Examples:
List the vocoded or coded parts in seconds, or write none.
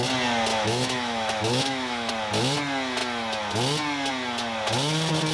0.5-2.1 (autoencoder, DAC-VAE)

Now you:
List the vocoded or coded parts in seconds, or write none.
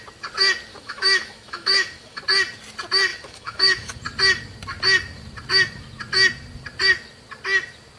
0.7-2.2 (autoencoder, DAC-VAE); 3.1-4.0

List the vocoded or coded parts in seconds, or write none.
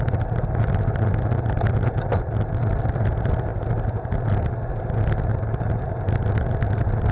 none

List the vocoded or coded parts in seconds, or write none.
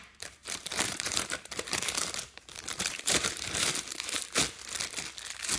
0.0-4.2 (vocoder, BigVGAN v2)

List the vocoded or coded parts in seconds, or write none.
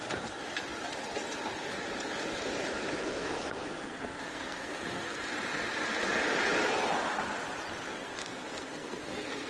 3.0-5.2 (codec, SNAC); 7.9-9.5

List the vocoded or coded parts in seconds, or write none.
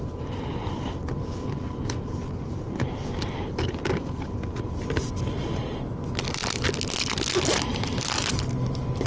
none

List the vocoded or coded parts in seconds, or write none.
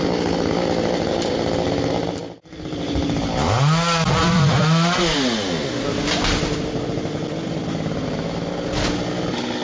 none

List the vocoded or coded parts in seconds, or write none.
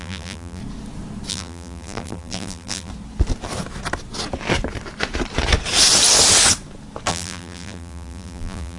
0.0-0.6 (vocoder, BigVGAN v2); 1.3-2.9; 7.1-8.8